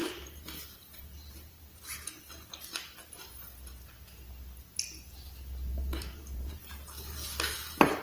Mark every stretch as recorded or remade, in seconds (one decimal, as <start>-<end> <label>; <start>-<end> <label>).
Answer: 0.0-2.3 remade; 2.3-5.7 recorded; 5.7-8.0 remade